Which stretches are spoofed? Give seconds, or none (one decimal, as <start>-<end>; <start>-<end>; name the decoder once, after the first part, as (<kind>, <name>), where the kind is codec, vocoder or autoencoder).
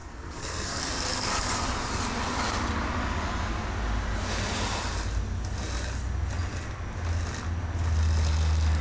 0.0-0.8 (codec, SNAC)